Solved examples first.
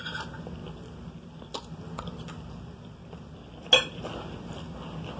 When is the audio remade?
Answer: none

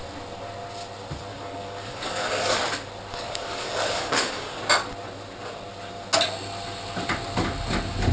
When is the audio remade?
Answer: 1.3-2.6; 3.1-4.6